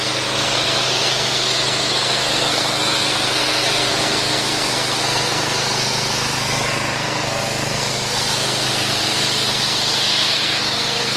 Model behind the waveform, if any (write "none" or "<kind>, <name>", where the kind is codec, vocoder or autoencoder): codec, SNAC